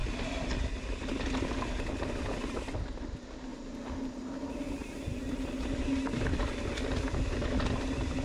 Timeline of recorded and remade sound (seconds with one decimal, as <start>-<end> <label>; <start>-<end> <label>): 0.0-8.2 recorded